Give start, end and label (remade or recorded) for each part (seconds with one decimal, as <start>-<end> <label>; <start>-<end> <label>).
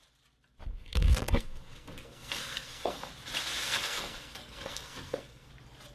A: 0.0-0.7 recorded; 0.7-3.1 remade; 3.1-3.6 recorded; 3.6-5.5 remade; 5.5-5.9 recorded